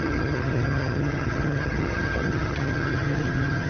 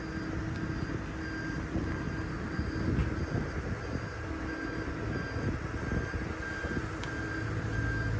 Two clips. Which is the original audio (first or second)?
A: second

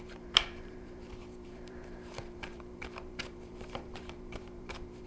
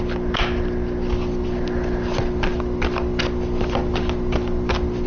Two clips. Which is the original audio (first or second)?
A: second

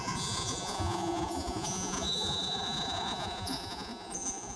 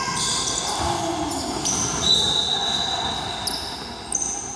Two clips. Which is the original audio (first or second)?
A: second